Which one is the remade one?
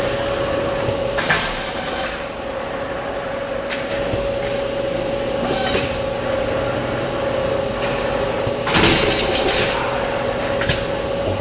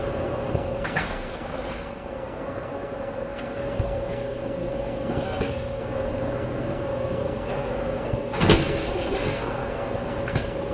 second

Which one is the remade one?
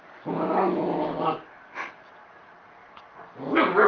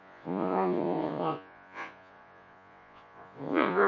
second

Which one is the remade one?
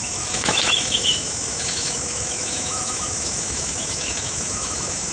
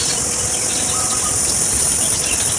first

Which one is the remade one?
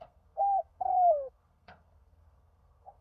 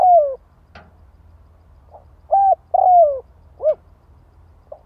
first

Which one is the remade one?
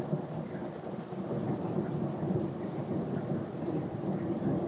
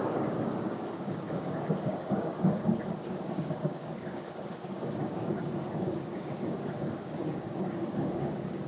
second